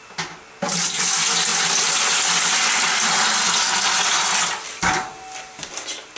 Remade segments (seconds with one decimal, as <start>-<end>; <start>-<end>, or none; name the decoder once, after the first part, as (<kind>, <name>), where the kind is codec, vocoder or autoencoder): none

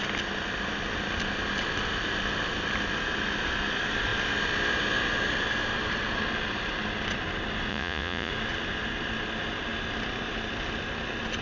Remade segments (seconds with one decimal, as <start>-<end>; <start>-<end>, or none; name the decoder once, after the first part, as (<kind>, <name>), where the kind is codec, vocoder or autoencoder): 7.7-8.3 (vocoder, Vocos)

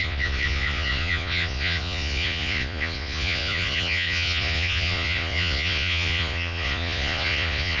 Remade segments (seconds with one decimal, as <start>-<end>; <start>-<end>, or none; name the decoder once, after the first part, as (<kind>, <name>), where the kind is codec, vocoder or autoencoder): 0.0-7.8 (vocoder, Vocos)

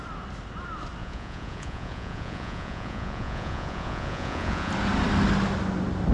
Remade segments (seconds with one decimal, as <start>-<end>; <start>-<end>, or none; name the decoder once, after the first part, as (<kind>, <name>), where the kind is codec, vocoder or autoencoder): 1.0-4.7 (vocoder, Vocos)

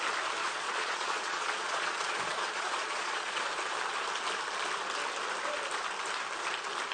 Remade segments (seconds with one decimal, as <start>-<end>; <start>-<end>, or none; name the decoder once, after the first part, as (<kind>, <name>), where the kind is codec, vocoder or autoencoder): 0.4-3.4 (vocoder, Vocos)

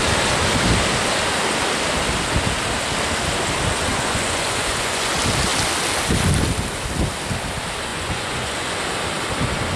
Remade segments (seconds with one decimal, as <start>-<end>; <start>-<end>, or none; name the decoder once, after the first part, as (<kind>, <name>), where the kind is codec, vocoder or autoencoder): 3.9-5.1 (vocoder, Vocos); 7.9-8.8